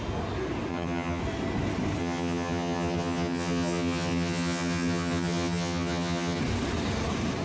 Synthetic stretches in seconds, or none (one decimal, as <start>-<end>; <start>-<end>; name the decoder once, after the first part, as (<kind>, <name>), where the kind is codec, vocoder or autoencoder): 0.7-1.2 (vocoder, HiFi-GAN); 2.0-6.4